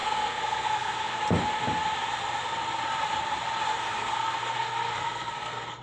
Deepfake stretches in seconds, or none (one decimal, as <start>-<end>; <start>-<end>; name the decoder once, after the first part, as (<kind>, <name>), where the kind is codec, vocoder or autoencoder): 0.0-1.2 (codec, SNAC); 3.8-5.8